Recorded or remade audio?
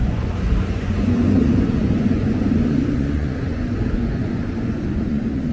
remade